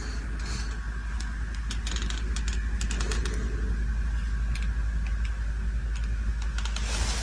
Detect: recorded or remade recorded